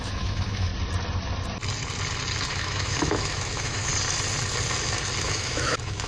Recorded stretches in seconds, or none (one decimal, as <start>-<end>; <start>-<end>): 0.7-2.5; 3.9-5.2